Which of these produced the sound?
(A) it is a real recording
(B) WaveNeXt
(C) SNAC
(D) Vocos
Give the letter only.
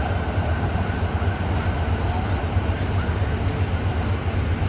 A